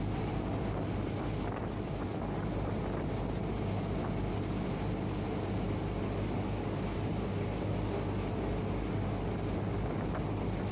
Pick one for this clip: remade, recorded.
recorded